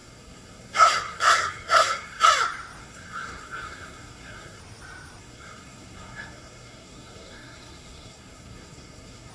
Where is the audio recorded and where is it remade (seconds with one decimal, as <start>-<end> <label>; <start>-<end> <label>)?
0.0-2.3 remade; 2.3-2.8 recorded; 2.8-4.6 remade; 4.6-5.2 recorded; 5.2-9.3 remade